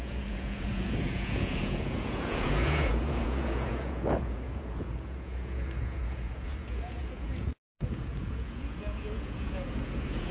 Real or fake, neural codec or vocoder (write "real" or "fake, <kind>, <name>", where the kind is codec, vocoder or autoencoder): fake, vocoder, Vocos